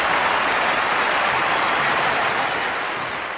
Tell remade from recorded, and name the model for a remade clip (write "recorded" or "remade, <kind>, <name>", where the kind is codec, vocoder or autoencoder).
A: recorded